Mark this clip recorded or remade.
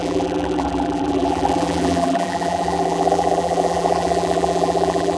remade